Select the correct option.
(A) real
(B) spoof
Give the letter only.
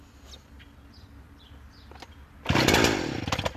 A